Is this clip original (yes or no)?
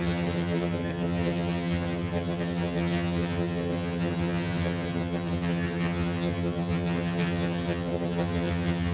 no